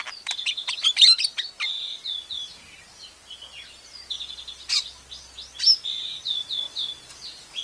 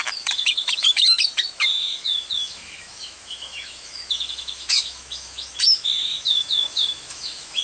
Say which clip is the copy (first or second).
second